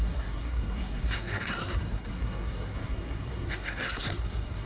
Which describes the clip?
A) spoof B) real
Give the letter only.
A